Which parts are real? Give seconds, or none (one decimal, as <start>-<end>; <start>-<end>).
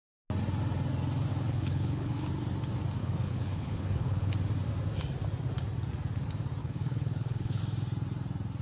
0.0-1.3; 2.3-3.0; 4.3-6.6; 7.6-8.6